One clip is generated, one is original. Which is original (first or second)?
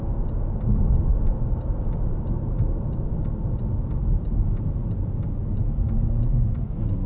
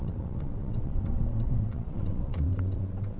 first